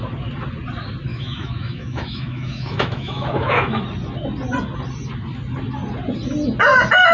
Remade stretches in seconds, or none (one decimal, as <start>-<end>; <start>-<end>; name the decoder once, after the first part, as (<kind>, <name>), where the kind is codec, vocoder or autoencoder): 1.1-3.8 (autoencoder, DAC-VAE)